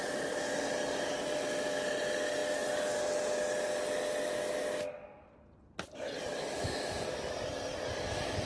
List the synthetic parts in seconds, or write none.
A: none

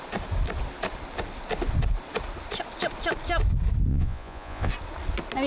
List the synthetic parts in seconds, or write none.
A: 3.9-4.7

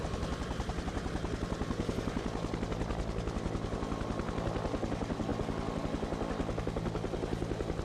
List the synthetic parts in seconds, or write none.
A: none